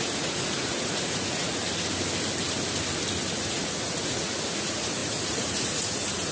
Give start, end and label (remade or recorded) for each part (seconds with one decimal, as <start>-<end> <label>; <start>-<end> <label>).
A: 0.0-1.6 remade; 1.6-3.3 recorded; 3.3-6.3 remade